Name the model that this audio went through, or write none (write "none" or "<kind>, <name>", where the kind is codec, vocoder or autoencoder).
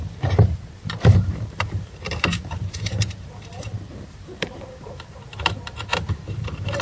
vocoder, BigVGAN v2